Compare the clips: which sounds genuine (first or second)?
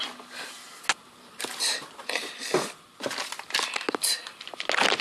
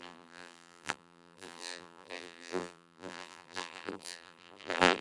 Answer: first